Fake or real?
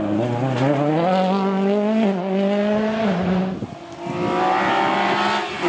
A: real